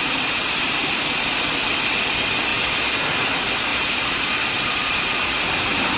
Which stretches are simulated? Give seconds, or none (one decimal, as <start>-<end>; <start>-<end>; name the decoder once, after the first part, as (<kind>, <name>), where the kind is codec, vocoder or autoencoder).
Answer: 0.0-1.0 (vocoder, BigVGAN v2); 3.7-5.0